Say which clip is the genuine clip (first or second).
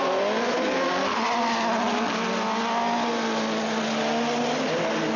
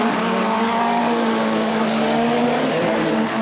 first